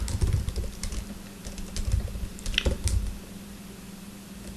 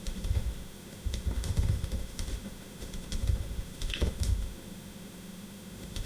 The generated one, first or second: second